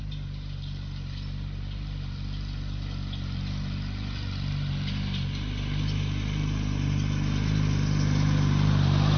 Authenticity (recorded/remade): recorded